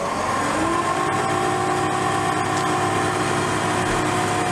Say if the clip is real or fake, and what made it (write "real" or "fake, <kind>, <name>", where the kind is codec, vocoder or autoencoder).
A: real